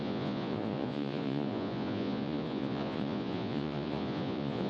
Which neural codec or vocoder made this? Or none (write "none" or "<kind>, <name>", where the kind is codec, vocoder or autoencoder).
vocoder, Vocos